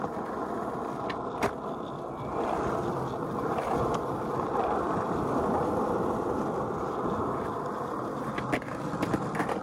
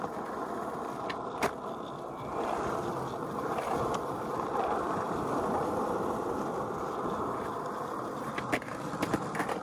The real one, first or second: first